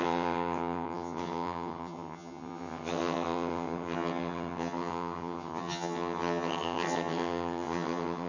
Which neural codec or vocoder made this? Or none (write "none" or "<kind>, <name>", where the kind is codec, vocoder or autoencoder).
vocoder, HiFi-GAN